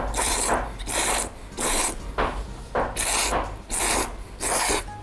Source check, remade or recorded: recorded